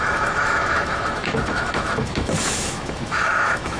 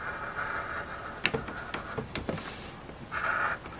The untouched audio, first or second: second